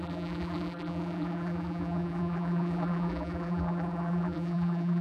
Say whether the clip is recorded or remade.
remade